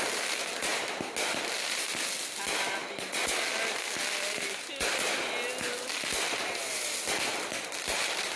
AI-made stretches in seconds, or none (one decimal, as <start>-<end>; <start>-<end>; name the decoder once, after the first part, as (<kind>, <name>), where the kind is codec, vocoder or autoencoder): none